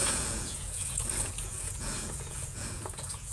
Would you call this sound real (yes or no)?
no